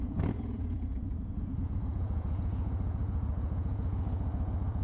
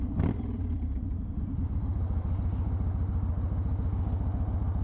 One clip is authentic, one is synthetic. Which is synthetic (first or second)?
first